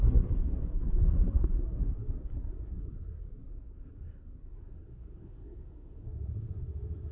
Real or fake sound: fake